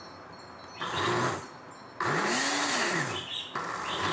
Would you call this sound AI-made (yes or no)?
no